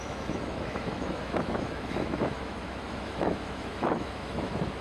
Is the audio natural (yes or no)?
no